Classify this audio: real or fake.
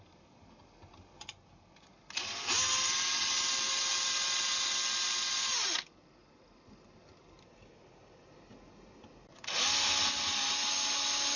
real